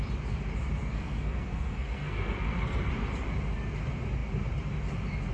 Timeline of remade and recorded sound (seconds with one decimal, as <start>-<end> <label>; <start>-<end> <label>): 0.0-0.8 recorded; 0.8-2.9 remade; 2.9-5.3 recorded